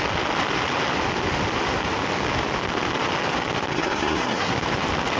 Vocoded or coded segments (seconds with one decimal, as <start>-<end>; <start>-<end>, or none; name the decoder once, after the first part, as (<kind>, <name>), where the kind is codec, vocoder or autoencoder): 3.7-4.5 (codec, SNAC)